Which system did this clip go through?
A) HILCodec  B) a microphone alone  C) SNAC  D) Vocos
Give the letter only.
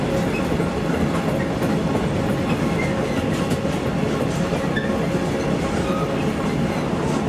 B